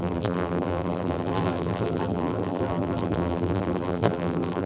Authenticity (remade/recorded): remade